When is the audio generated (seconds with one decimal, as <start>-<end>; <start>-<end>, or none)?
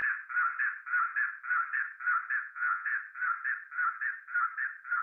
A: 2.4-2.9